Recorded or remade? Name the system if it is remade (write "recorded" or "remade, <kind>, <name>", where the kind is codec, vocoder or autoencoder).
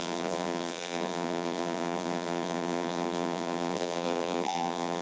remade, vocoder, BigVGAN v2